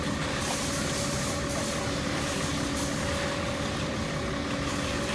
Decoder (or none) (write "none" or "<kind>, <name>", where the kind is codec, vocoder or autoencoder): none